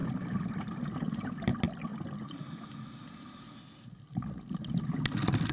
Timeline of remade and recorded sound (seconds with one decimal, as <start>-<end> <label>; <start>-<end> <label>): 0.0-5.5 recorded